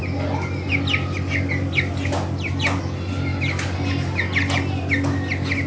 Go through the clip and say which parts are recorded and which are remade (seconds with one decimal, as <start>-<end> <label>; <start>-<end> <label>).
0.0-5.7 recorded